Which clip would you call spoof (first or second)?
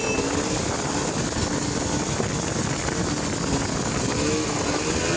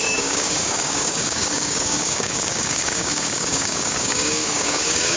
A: second